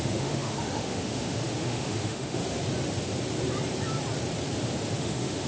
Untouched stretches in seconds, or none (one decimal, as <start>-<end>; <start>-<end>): 2.4-5.0